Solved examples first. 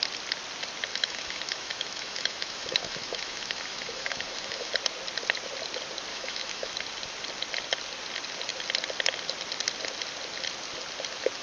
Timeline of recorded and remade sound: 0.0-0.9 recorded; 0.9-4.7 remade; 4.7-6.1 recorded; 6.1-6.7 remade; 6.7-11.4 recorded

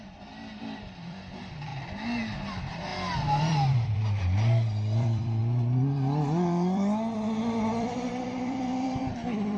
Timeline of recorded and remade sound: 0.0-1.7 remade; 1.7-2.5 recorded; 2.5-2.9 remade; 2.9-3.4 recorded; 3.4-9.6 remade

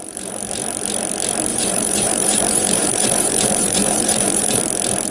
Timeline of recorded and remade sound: 0.0-1.5 recorded; 1.5-4.6 remade; 4.6-5.1 recorded

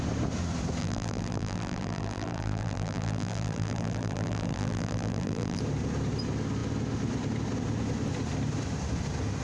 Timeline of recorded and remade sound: 0.0-0.8 recorded; 0.8-5.6 remade; 5.6-9.4 recorded

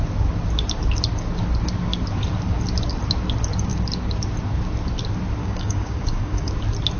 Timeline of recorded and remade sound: 0.0-5.4 recorded; 5.4-6.5 remade; 6.5-7.0 recorded

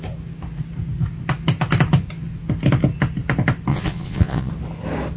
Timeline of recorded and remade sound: 0.0-3.7 recorded; 3.7-4.5 remade; 4.5-5.2 recorded

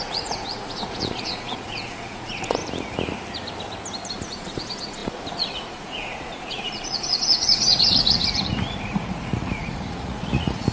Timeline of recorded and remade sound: 0.0-2.6 remade; 2.6-4.1 recorded; 4.1-10.7 remade

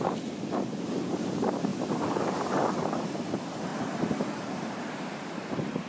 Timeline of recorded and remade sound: 0.0-5.9 recorded